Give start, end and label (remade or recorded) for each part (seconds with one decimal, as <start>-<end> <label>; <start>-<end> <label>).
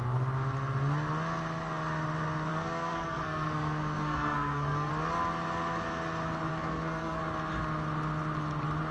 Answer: 0.0-2.5 recorded; 2.5-4.9 remade; 4.9-6.5 recorded; 6.5-7.2 remade; 7.2-8.9 recorded